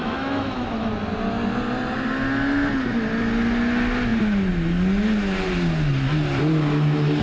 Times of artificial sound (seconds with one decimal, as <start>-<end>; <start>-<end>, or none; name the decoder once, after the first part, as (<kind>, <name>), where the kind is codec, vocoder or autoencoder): 0.0-0.9 (autoencoder, DAC-VAE)